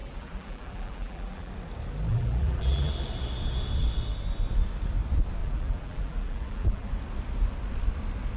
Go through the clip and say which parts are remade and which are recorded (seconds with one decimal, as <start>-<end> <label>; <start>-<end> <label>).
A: 0.0-1.5 remade; 1.5-2.1 recorded; 2.1-2.9 remade; 2.9-5.4 recorded; 5.4-6.9 remade; 6.9-8.4 recorded